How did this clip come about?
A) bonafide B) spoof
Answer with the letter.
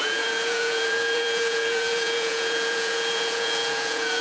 B